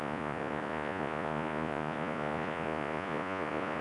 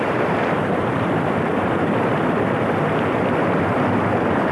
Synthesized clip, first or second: first